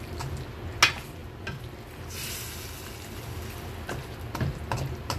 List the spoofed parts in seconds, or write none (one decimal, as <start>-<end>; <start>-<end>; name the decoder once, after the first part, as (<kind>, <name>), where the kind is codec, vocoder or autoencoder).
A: none